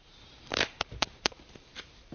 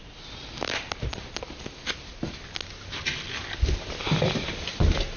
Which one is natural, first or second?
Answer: second